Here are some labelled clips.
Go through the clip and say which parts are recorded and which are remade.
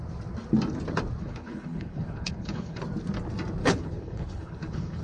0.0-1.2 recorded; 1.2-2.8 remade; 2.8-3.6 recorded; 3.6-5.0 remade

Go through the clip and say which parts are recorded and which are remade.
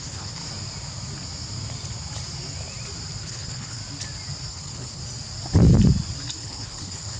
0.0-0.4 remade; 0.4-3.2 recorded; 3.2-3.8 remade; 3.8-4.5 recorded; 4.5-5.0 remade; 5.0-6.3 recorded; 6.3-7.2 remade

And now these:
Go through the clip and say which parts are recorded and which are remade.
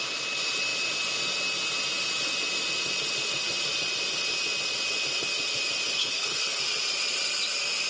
0.0-6.0 recorded; 6.0-6.6 remade; 6.6-7.9 recorded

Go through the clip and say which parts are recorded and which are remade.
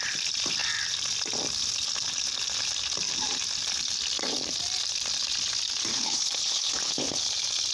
0.0-5.9 recorded; 5.9-7.2 remade; 7.2-7.7 recorded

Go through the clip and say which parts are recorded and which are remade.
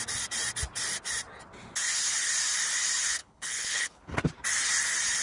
0.0-3.2 recorded; 3.2-4.2 remade; 4.2-5.2 recorded